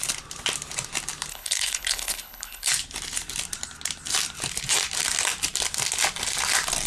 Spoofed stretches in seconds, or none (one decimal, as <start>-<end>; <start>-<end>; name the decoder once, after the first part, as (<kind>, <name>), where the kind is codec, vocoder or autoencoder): 1.3-2.7 (codec, HILCodec)